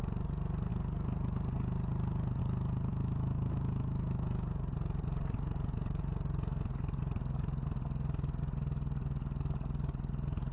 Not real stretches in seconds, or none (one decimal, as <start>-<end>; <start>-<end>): 2.9-4.6